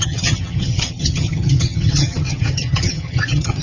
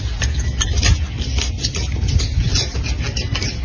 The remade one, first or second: first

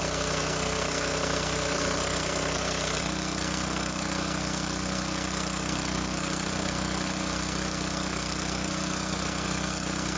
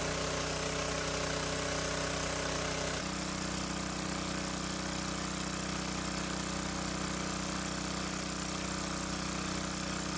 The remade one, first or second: first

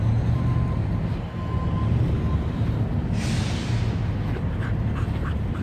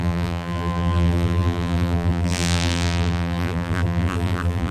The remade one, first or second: second